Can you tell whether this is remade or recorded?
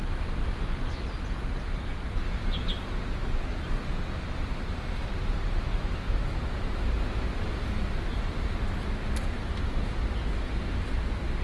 recorded